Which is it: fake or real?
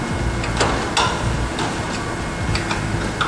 real